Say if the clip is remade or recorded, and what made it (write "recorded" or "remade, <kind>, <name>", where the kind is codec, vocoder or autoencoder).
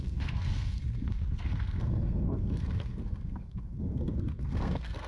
remade, codec, SNAC